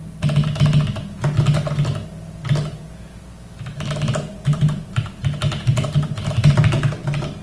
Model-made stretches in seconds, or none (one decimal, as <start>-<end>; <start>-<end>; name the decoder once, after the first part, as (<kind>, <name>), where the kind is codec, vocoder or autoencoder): 4.3-6.6 (vocoder, BigVGAN v2)